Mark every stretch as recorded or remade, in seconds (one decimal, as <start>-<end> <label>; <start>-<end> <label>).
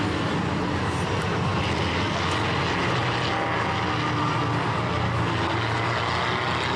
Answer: 0.0-6.8 recorded